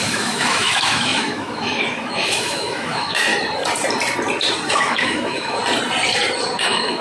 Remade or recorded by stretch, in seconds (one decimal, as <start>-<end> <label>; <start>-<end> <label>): 0.0-3.3 remade; 3.3-4.7 recorded; 4.7-5.6 remade; 5.6-6.6 recorded; 6.6-7.0 remade